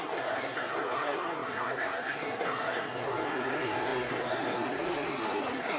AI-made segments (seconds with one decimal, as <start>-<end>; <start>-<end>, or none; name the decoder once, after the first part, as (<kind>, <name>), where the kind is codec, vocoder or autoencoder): 0.0-5.8 (codec, SNAC)